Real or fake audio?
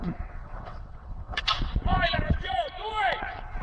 fake